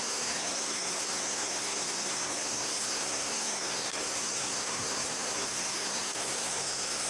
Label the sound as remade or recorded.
remade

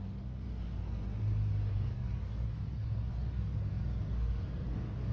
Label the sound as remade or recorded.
remade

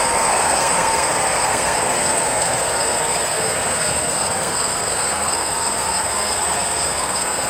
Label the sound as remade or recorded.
remade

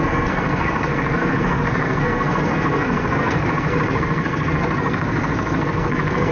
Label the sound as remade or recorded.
remade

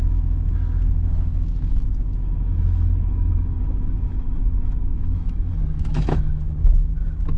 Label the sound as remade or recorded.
remade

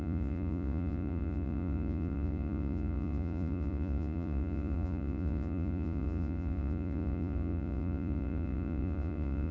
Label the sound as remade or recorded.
remade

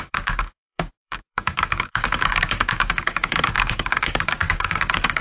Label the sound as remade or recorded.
remade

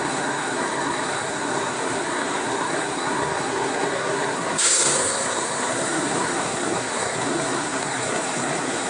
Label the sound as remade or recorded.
remade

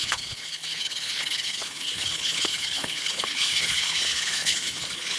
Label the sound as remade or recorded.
remade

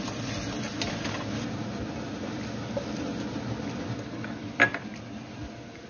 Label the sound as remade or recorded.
recorded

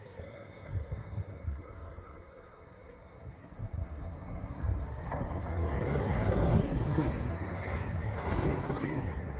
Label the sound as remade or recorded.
remade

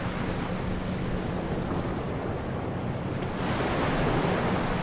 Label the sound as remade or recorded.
recorded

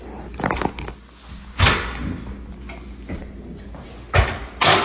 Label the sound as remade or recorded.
recorded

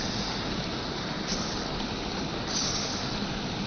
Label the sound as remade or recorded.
recorded